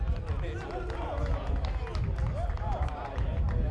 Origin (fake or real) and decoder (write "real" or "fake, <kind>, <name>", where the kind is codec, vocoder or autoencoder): real